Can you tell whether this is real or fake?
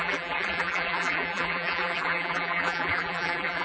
fake